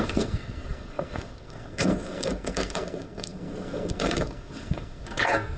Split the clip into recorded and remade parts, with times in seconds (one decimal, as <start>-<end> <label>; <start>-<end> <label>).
0.0-5.6 remade

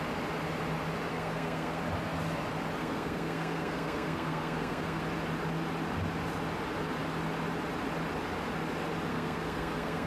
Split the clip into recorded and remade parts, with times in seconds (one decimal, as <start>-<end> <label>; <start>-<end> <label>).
0.0-1.1 recorded; 1.1-1.8 remade; 1.8-2.8 recorded; 2.8-5.0 remade; 5.0-9.1 recorded; 9.1-10.1 remade

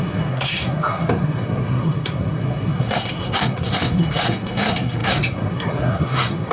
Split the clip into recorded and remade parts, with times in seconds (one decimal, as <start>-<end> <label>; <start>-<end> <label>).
0.0-6.5 remade

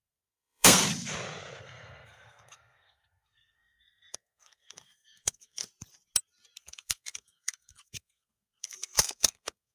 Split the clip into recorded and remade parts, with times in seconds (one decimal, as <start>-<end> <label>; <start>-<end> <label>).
0.0-0.8 remade; 0.8-1.6 recorded; 1.6-5.7 remade; 5.7-6.6 recorded; 6.6-9.7 remade

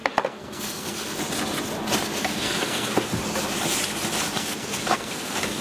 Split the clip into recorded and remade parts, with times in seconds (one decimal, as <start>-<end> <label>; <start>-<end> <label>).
0.0-1.2 remade; 1.2-2.2 recorded; 2.2-3.2 remade; 3.2-4.4 recorded; 4.4-5.6 remade

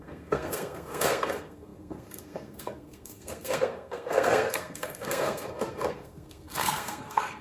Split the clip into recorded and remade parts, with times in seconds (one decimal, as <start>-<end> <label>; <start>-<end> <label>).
0.0-7.4 remade